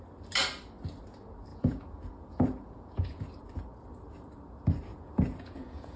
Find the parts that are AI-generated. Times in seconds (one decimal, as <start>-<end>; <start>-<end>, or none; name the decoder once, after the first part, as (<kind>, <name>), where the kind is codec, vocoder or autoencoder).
1.5-3.4 (vocoder, Vocos); 4.9-6.0